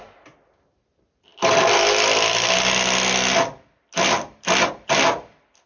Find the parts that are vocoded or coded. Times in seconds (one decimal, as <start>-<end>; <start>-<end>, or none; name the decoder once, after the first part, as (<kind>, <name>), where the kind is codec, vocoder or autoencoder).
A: none